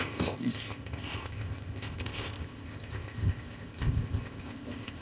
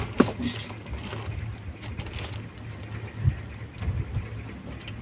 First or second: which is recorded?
second